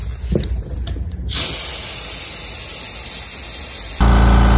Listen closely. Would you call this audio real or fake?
real